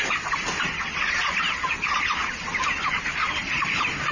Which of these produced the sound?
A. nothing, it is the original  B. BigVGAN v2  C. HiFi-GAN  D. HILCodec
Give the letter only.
A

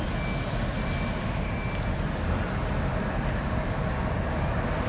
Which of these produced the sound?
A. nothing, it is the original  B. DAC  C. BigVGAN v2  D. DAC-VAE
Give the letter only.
A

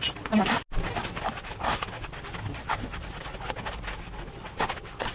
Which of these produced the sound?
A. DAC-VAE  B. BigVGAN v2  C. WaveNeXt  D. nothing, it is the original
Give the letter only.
D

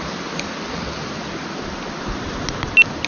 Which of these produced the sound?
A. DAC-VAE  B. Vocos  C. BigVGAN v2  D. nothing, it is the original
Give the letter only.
D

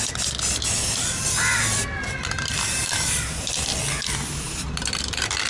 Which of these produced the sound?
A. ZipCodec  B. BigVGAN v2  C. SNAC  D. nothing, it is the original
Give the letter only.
D